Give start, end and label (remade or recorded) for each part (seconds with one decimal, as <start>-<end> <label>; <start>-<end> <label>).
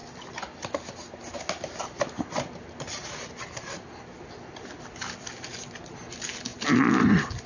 0.0-7.5 recorded